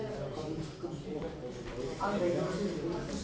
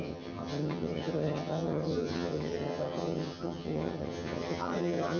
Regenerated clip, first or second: second